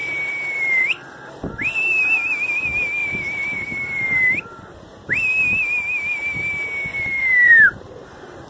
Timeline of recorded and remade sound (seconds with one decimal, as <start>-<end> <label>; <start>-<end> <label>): 0.0-1.4 remade; 1.4-3.0 recorded; 3.0-4.4 remade; 4.4-6.9 recorded; 6.9-8.5 remade